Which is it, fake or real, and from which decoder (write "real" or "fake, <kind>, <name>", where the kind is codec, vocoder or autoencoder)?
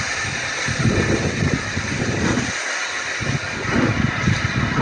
real